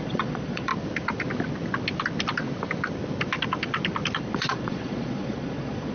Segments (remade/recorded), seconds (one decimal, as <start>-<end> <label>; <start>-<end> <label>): 0.0-0.7 remade; 0.7-4.2 recorded; 4.2-5.9 remade

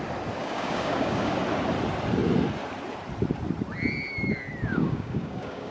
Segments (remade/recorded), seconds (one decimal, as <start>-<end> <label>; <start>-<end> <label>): 0.0-0.4 recorded; 0.4-1.3 remade; 1.3-4.7 recorded; 4.7-5.7 remade

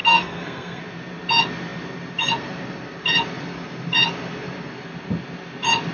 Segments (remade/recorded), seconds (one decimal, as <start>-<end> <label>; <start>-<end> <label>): 0.0-0.8 remade; 0.8-5.9 recorded